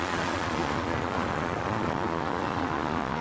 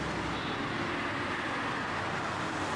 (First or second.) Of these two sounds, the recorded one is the second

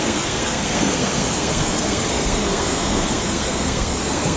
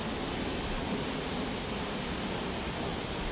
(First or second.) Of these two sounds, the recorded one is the second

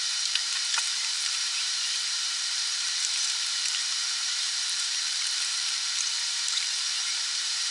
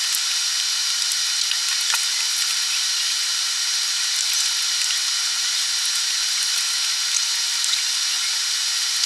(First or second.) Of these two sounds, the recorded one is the second